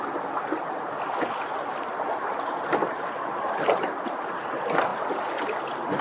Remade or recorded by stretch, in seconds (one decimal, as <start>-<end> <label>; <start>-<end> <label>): 0.0-6.0 recorded